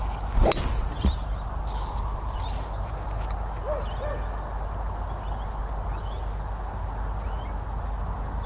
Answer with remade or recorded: recorded